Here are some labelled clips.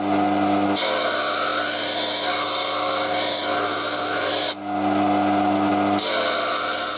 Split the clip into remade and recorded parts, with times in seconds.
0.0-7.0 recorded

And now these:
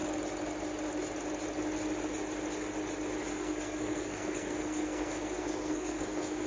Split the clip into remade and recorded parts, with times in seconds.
0.0-3.3 recorded; 3.3-6.5 remade

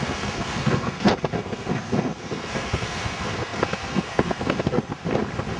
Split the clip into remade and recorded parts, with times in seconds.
0.0-4.9 remade; 4.9-5.6 recorded

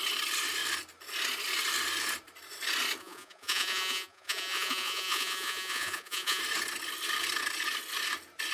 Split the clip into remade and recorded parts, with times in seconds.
0.0-3.0 recorded; 3.0-6.4 remade; 6.4-8.5 recorded

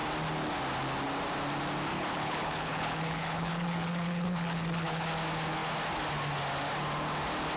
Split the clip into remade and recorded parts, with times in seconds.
0.0-1.9 recorded; 1.9-5.1 remade; 5.1-7.6 recorded